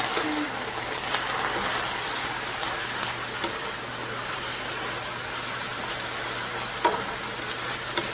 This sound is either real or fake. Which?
real